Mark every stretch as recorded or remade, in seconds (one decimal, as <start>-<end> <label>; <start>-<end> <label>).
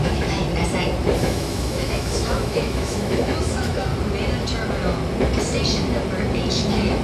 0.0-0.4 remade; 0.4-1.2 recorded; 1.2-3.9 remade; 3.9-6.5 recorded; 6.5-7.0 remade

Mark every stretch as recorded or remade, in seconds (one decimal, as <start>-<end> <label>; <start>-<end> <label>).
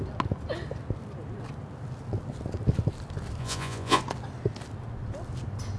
0.0-3.4 recorded; 3.4-4.0 remade; 4.0-5.8 recorded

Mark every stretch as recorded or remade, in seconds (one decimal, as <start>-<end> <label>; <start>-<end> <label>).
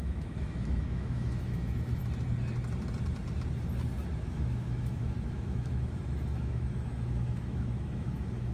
0.0-2.0 remade; 2.0-4.2 recorded; 4.2-8.5 remade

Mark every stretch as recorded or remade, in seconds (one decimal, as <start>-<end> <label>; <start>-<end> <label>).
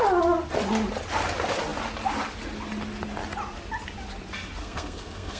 0.0-4.6 recorded; 4.6-5.4 remade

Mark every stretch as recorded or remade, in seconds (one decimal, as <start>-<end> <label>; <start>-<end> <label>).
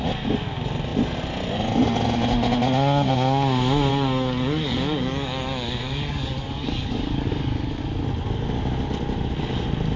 0.0-3.9 recorded; 3.9-7.8 remade; 7.8-10.0 recorded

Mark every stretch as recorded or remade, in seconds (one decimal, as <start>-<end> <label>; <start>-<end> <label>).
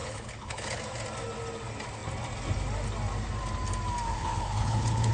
0.0-0.8 remade; 0.8-4.1 recorded; 4.1-5.1 remade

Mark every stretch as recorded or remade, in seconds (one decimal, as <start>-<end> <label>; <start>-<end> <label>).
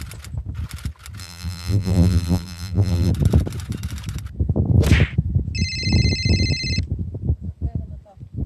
0.0-1.2 recorded; 1.2-3.1 remade; 3.1-8.5 recorded